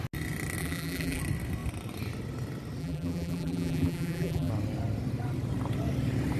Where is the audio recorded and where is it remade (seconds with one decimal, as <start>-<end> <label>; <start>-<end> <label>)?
0.0-0.6 recorded; 0.6-1.2 remade; 1.2-2.8 recorded; 2.8-4.5 remade; 4.5-6.4 recorded